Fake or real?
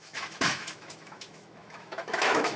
fake